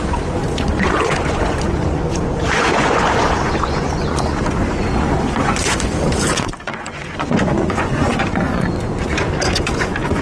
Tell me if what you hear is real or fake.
fake